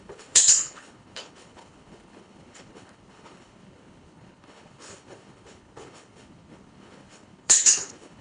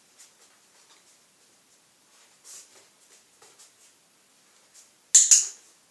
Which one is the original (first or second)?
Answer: second